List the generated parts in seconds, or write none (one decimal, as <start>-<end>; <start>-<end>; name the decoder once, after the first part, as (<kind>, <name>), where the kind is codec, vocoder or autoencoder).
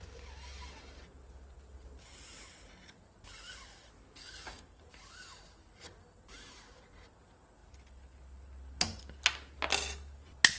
4.2-4.8 (codec, DAC)